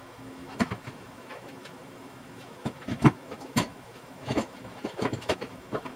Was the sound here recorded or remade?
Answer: remade